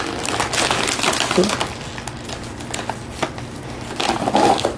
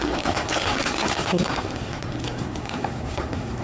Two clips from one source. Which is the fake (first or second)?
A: second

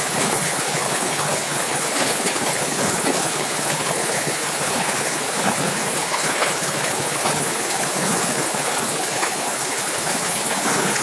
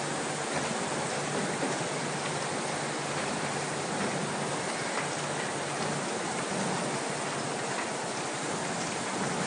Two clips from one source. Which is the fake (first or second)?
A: first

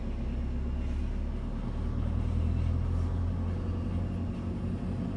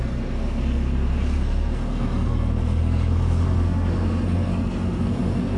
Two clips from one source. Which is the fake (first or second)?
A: second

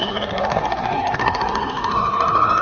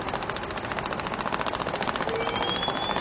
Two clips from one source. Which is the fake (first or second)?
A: first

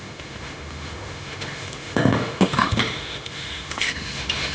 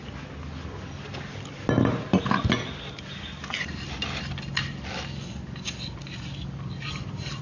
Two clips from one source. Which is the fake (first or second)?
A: first